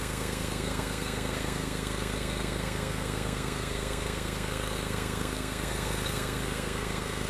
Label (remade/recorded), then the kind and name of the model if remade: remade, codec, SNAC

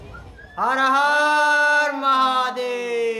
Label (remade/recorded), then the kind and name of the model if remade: recorded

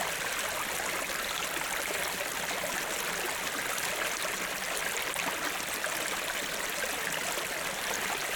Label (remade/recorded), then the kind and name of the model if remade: recorded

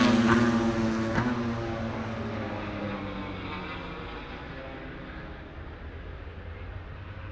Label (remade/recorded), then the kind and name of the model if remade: recorded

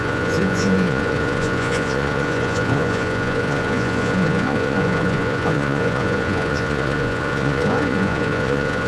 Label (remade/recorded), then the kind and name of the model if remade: remade, vocoder, Vocos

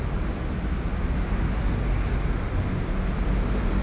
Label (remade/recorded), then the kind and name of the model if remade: recorded